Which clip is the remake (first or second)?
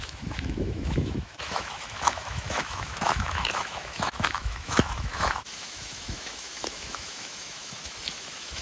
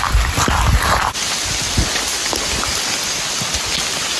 first